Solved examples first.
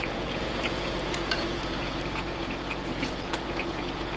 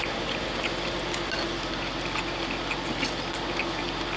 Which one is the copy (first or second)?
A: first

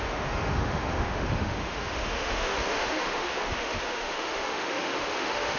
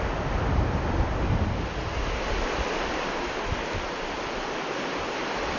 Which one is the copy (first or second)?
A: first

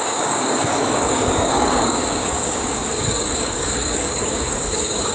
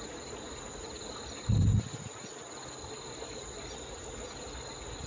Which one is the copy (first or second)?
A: first